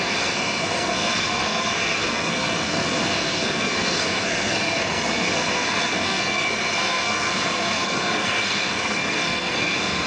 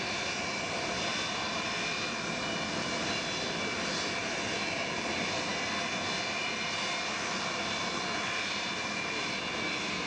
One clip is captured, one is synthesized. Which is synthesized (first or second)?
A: first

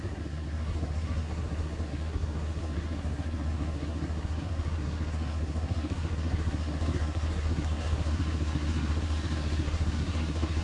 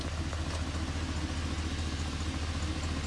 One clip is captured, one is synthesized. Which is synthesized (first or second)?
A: first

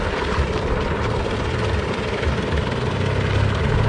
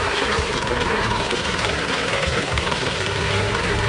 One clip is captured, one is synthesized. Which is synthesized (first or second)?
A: second